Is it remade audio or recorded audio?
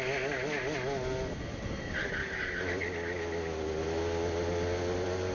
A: recorded